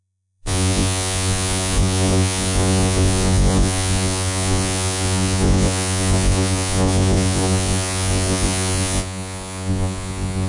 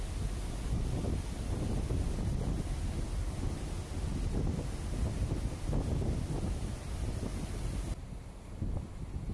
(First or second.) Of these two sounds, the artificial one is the first